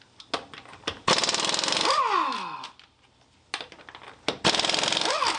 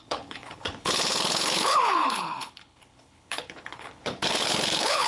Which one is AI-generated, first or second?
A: second